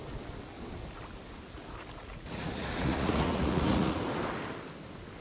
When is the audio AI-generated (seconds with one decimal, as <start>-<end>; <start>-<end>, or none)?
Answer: 2.0-4.0